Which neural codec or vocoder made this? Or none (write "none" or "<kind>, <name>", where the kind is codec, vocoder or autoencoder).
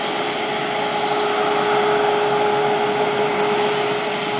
none